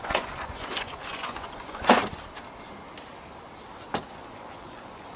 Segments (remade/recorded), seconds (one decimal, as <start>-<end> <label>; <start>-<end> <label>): 0.0-2.0 remade; 2.0-4.1 recorded; 4.1-5.2 remade